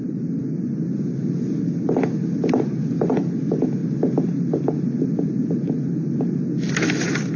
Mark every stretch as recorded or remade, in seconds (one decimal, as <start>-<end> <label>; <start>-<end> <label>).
0.0-7.4 recorded